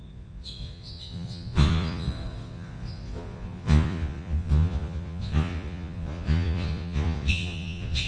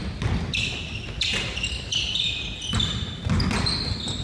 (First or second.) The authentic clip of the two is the second